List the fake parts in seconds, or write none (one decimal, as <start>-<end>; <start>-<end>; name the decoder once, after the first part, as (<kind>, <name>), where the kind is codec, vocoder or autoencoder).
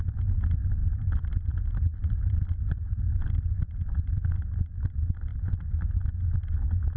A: none